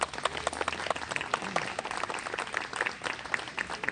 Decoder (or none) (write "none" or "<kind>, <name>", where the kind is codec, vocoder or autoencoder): none